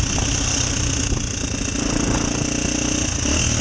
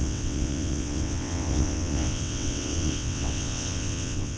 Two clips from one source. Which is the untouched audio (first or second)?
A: first